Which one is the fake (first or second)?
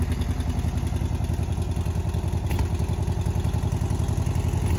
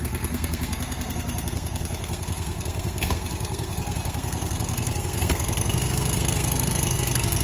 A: second